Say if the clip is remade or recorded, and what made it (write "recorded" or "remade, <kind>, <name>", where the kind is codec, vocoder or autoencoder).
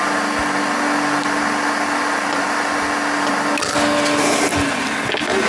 recorded